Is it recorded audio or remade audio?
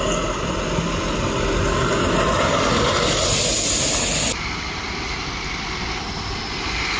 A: recorded